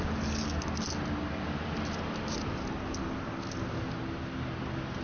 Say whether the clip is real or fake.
real